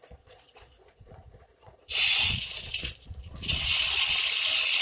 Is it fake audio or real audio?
fake